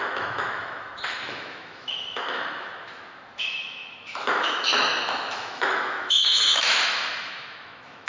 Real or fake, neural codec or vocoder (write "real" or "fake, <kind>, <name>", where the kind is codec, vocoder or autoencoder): fake, autoencoder, DAC-VAE